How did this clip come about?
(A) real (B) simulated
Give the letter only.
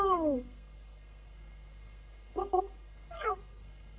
B